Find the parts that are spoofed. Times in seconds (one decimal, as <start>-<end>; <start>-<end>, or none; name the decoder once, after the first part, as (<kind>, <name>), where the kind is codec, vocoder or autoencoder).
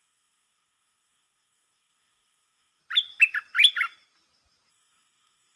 0.0-2.8 (codec, DAC); 4.7-5.6